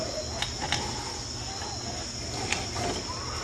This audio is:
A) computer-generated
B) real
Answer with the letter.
B